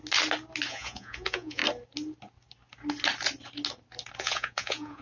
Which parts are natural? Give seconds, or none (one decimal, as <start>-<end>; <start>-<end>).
0.0-0.7; 1.6-4.2